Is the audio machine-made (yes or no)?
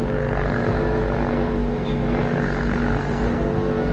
yes